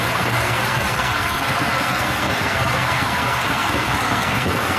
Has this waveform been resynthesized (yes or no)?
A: yes